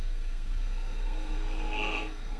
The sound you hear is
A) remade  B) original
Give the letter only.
A